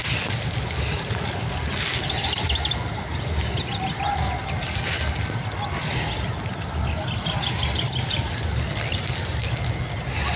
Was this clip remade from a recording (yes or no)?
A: no